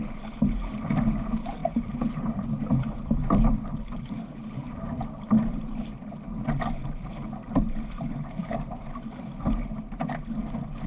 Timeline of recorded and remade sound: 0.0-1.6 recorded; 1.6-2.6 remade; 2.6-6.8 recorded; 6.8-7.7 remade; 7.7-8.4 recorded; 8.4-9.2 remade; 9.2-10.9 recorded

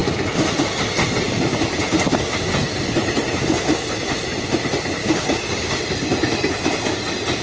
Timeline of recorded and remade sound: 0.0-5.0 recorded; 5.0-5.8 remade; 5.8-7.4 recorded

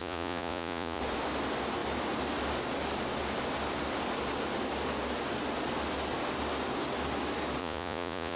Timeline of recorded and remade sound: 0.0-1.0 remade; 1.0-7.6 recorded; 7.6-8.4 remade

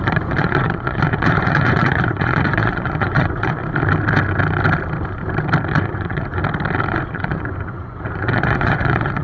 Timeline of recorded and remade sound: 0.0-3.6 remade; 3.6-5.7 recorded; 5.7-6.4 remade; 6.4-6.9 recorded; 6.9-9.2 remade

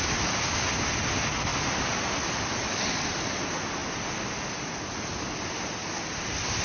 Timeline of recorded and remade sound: 0.0-6.6 recorded

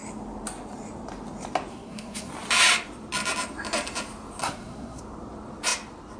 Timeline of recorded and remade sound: 0.0-1.7 recorded; 1.7-2.3 remade; 2.3-4.4 recorded; 4.4-5.0 remade; 5.0-6.2 recorded